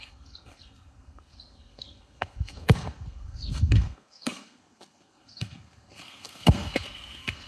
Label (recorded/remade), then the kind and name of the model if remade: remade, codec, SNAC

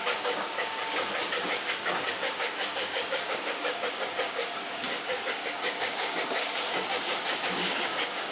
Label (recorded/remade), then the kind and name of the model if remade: remade, codec, DAC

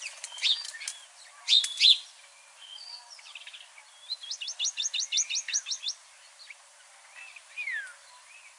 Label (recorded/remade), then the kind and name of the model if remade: recorded